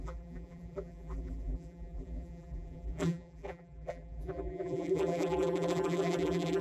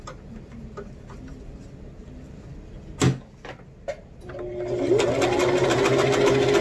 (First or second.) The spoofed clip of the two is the first